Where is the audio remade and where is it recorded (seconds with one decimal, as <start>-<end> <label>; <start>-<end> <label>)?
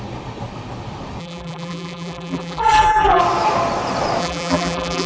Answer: 0.0-1.2 recorded; 1.2-3.2 remade; 3.2-4.2 recorded; 4.2-5.1 remade